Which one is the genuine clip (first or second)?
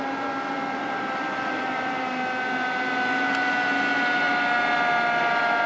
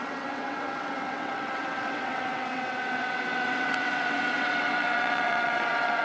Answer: first